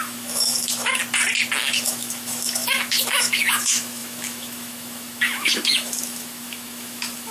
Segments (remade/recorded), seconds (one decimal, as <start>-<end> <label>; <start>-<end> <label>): 0.0-1.0 remade; 1.0-1.6 recorded; 1.6-7.3 remade